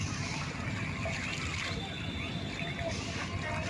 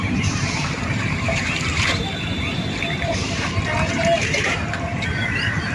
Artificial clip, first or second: second